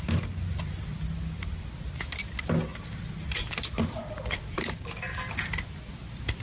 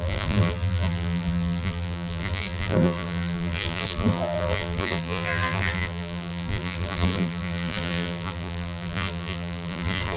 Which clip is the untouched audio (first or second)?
first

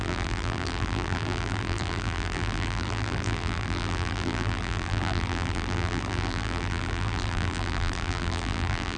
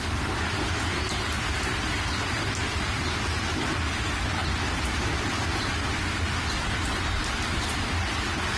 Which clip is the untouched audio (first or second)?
second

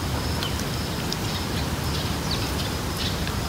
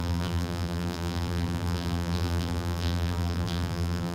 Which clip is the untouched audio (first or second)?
first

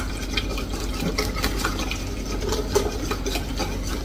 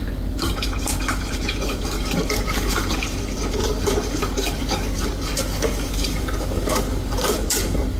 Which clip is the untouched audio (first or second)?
first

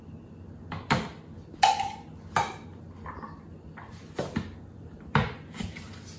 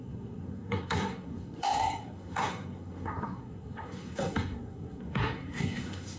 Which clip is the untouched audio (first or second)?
first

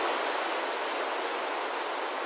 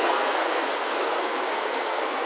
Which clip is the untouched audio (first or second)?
first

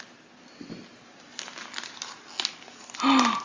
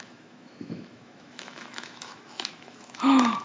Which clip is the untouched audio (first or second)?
first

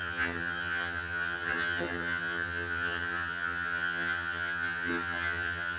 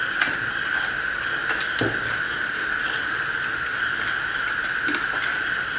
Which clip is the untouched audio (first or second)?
second